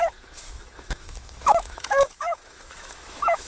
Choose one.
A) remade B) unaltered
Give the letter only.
A